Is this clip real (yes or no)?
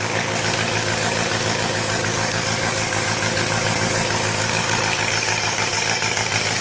no